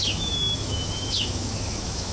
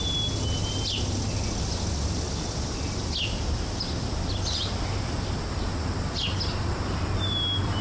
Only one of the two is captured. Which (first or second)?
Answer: second